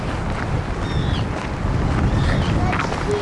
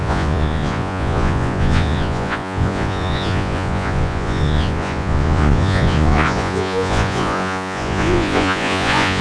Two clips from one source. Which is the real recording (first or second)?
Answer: first